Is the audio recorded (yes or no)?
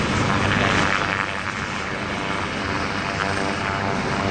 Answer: yes